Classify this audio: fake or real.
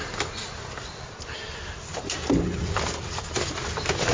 real